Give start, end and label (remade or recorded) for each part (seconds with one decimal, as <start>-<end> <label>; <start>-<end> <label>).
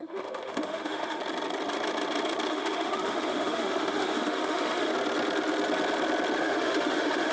0.0-1.2 remade; 1.2-2.5 recorded; 2.5-4.9 remade; 4.9-6.4 recorded; 6.4-7.3 remade